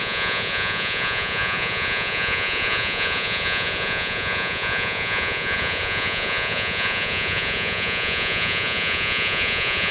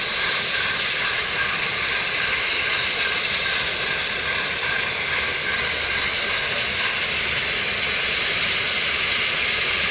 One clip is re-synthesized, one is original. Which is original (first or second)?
second